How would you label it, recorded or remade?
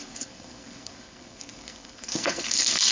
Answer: remade